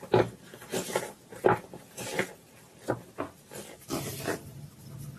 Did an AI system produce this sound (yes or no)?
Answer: no